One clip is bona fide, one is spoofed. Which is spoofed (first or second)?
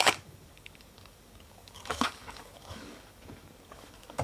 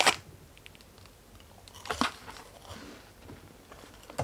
first